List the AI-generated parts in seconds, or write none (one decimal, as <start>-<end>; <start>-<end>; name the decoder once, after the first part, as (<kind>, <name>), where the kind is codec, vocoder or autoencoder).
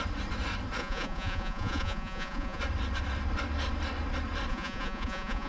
0.8-2.6 (vocoder, Vocos); 4.5-5.5